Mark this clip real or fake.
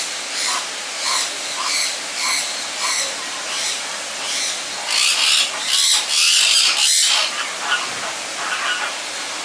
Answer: real